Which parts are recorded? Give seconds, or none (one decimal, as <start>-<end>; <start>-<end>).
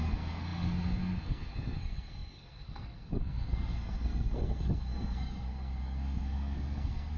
none